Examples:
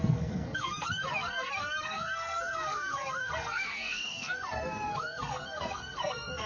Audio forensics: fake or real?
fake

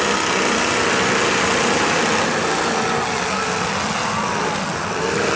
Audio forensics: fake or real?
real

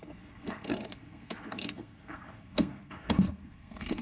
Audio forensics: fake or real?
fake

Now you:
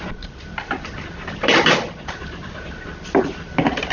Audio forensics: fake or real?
real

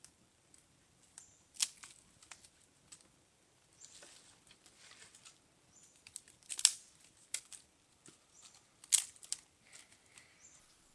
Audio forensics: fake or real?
real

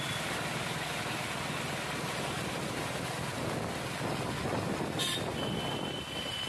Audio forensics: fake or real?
real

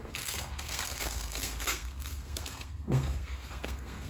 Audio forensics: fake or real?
fake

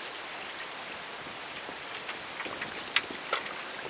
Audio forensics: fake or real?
real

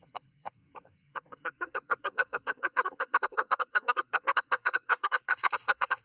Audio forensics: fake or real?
fake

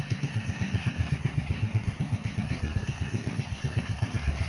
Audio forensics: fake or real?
fake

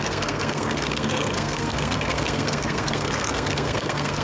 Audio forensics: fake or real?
fake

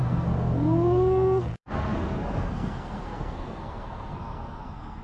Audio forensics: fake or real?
fake